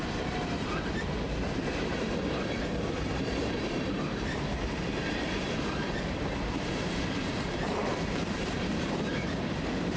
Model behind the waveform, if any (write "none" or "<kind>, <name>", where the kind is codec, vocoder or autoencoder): vocoder, BigVGAN v2